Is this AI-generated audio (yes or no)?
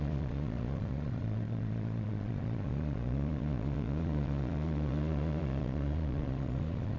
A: yes